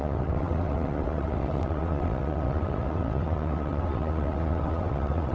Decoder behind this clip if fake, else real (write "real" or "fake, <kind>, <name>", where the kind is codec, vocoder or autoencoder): fake, vocoder, WaveNeXt